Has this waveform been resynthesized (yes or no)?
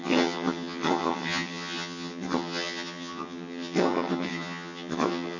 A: yes